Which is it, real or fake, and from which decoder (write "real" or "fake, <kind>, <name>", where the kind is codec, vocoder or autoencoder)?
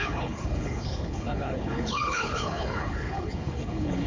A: fake, codec, HILCodec